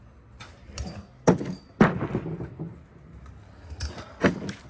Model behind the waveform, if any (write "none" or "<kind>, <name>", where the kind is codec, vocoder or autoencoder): none